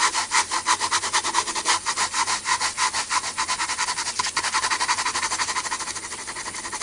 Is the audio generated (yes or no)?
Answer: yes